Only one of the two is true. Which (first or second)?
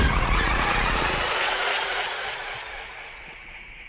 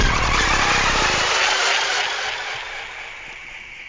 second